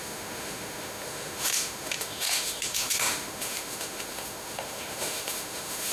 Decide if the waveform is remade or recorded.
remade